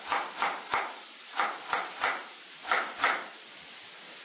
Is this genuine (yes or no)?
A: yes